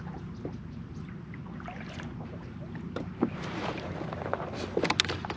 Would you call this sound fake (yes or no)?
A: no